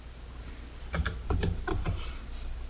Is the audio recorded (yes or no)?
yes